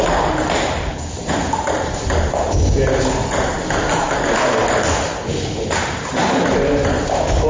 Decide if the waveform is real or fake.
real